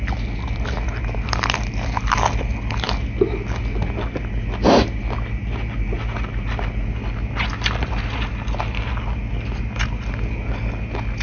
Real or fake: real